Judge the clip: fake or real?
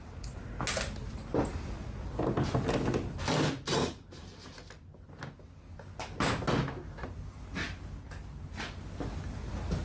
real